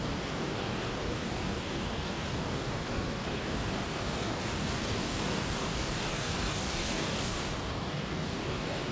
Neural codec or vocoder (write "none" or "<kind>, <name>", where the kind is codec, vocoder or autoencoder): codec, DAC